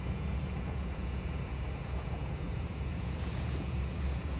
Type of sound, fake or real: fake